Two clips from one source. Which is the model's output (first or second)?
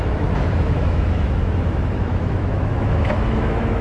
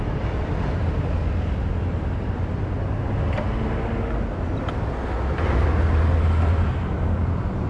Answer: first